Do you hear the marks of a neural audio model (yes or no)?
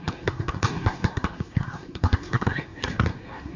yes